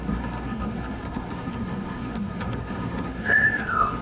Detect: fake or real fake